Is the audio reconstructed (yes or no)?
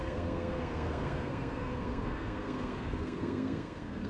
yes